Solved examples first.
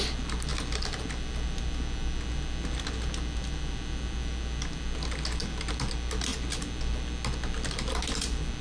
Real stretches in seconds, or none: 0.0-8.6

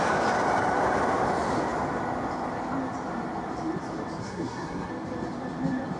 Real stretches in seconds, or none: 0.0-4.2; 4.9-6.0

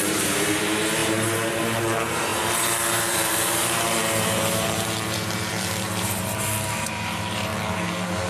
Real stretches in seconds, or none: 7.5-8.3

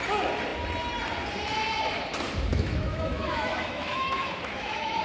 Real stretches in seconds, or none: 0.0-2.5